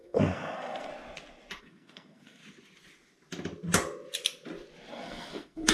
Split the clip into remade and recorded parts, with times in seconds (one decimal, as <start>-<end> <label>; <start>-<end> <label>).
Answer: 0.0-0.9 remade; 0.9-1.6 recorded; 1.6-2.4 remade; 2.4-4.9 recorded; 4.9-5.7 remade